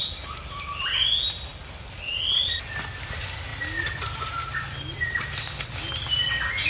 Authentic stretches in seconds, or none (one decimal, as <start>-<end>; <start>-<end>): 0.0-6.7